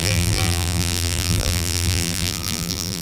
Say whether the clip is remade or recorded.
remade